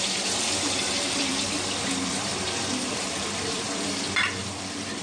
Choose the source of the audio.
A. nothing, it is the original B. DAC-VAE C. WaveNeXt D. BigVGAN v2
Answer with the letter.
D